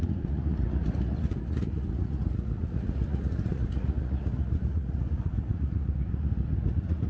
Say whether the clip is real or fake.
fake